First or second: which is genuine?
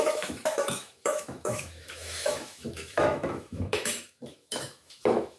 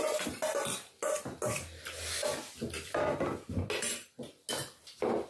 second